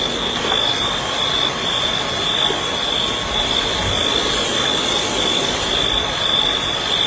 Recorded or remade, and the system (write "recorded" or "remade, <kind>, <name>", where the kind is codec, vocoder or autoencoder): recorded